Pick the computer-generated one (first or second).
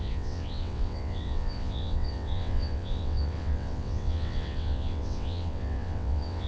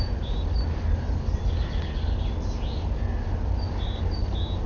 first